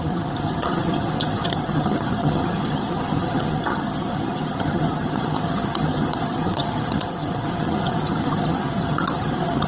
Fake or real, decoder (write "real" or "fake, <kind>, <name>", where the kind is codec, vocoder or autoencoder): fake, vocoder, HiFi-GAN